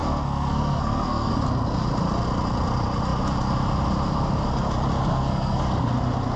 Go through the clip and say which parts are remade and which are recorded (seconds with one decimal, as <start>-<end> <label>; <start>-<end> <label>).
0.0-1.3 remade; 1.3-5.1 recorded; 5.1-5.6 remade; 5.6-6.4 recorded